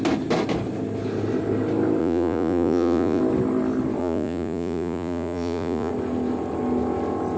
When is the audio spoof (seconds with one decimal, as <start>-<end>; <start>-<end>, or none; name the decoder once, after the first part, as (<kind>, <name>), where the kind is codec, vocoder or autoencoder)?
2.0-3.2 (vocoder, Vocos); 4.0-5.9